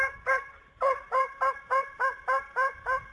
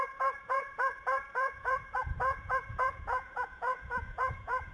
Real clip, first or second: first